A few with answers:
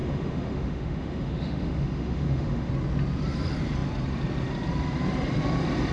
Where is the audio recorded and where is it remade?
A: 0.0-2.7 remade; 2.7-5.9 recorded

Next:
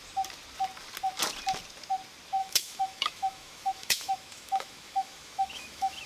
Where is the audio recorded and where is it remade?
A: 0.0-2.4 recorded; 2.4-6.1 remade

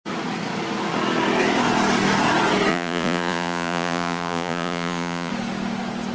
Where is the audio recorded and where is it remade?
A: 0.0-2.7 recorded; 2.7-5.3 remade; 5.3-6.1 recorded

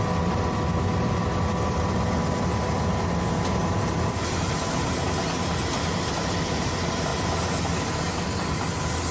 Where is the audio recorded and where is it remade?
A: 0.0-9.1 recorded

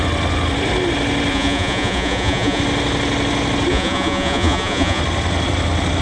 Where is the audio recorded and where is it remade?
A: 0.0-1.3 recorded; 1.3-2.6 remade; 2.6-3.7 recorded; 3.7-5.0 remade; 5.0-6.0 recorded

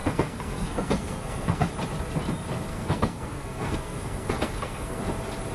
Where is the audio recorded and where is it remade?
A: 0.0-1.7 remade; 1.7-2.7 recorded; 2.7-5.0 remade; 5.0-5.5 recorded

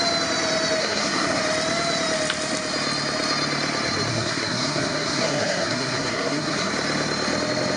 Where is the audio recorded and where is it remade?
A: 0.0-0.8 recorded; 0.8-1.4 remade; 1.4-4.1 recorded; 4.1-6.7 remade; 6.7-7.8 recorded